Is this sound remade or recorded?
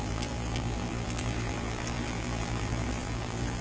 remade